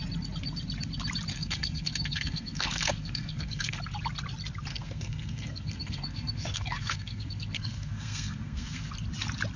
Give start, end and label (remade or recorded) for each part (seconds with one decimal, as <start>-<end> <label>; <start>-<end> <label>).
0.0-1.3 recorded; 1.3-3.8 remade; 3.8-4.7 recorded; 4.7-8.9 remade; 8.9-9.6 recorded